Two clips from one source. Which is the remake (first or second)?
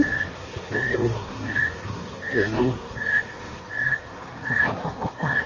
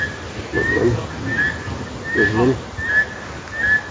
first